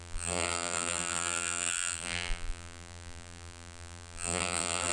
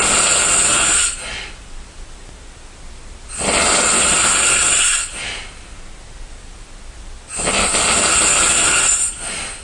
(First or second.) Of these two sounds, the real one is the second